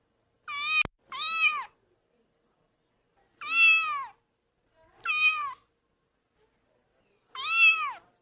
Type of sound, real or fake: real